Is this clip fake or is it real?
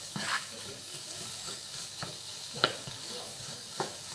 fake